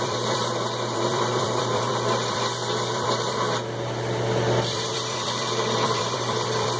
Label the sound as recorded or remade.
remade